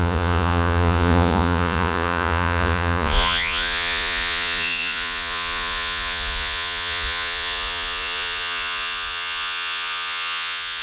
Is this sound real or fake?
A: fake